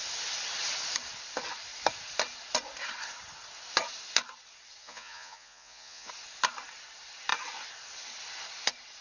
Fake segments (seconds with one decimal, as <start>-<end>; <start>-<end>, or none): 4.8-6.1